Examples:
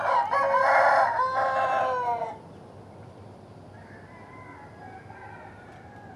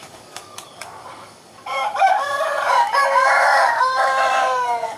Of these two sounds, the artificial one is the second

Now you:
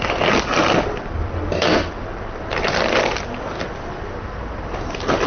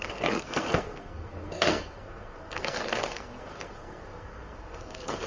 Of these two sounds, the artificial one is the second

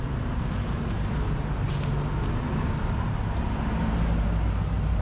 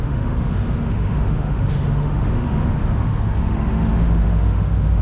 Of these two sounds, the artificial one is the second